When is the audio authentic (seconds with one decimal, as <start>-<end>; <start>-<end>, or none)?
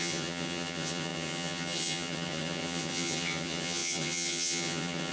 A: none